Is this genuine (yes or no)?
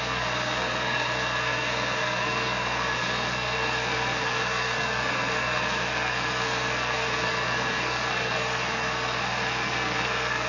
no